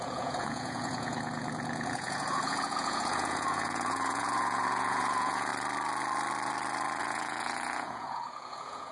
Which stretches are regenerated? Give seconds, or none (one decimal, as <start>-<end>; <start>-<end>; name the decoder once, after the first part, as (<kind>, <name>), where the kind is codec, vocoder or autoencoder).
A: 0.0-5.5 (vocoder, Vocos); 7.0-8.9